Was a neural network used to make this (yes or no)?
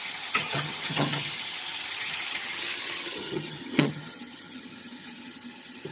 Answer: yes